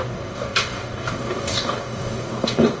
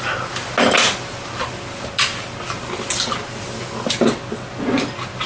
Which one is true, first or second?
second